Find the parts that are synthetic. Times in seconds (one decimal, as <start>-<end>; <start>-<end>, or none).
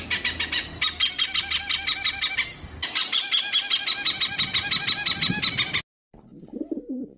2.8-3.6; 6.3-7.2